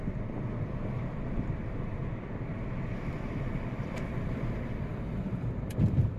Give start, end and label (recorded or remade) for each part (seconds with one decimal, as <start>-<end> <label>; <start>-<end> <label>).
0.0-2.0 remade; 2.0-3.0 recorded; 3.0-6.2 remade